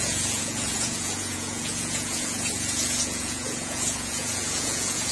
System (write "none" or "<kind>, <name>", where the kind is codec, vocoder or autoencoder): vocoder, Vocos